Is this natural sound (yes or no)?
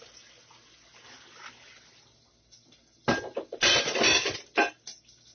yes